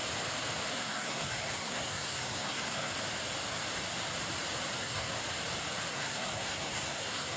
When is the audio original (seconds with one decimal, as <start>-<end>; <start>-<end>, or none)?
0.0-0.7; 2.9-4.8; 5.2-5.9